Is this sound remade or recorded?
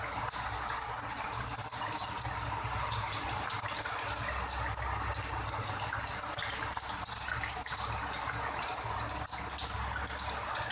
recorded